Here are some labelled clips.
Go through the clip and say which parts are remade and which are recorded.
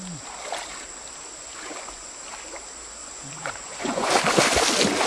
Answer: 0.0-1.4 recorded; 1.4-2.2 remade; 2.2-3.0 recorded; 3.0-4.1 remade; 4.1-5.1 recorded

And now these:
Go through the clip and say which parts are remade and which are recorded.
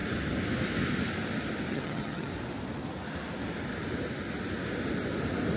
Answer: 0.0-1.7 recorded; 1.7-2.3 remade; 2.3-5.6 recorded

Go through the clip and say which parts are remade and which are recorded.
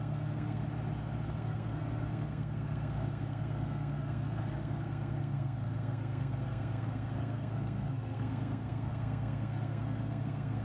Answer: 0.0-0.6 remade; 0.6-1.2 recorded; 1.2-10.6 remade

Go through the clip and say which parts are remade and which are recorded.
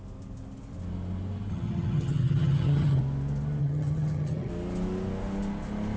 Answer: 0.0-1.5 recorded; 1.5-3.0 remade; 3.0-3.6 recorded; 3.6-4.5 remade; 4.5-6.0 recorded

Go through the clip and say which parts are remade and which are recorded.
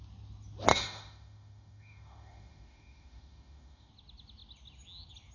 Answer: 0.0-0.7 recorded; 0.7-3.9 remade; 3.9-5.3 recorded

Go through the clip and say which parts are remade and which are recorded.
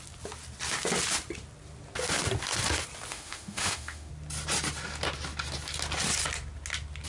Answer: 0.0-3.1 recorded; 3.1-4.1 remade; 4.1-7.1 recorded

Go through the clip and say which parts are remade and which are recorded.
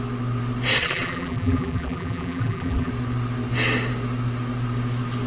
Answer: 0.0-0.8 recorded; 0.8-2.9 remade; 2.9-5.3 recorded